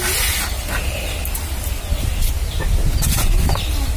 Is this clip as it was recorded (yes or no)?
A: yes